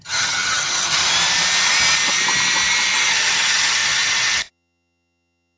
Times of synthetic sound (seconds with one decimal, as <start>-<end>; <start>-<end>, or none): 0.0-1.0; 3.1-5.6